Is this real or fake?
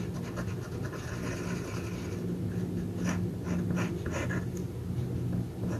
real